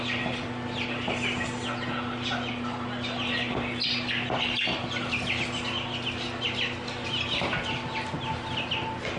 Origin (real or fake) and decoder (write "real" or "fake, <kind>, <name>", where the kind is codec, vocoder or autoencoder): real